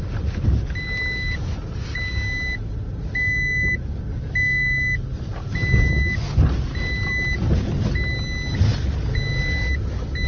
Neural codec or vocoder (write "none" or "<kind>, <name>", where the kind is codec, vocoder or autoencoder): none